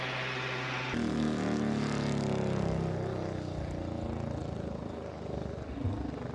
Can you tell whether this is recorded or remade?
recorded